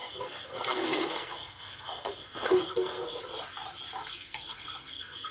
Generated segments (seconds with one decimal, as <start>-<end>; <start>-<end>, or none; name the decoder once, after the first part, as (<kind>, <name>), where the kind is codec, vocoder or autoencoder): 0.0-3.2 (codec, SNAC); 4.0-5.3